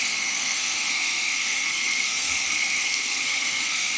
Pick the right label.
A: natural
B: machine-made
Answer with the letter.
B